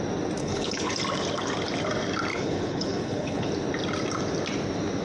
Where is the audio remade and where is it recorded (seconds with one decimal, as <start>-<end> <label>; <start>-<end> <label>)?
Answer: 0.0-0.4 recorded; 0.4-0.9 remade; 0.9-2.3 recorded; 2.3-3.5 remade; 3.5-5.0 recorded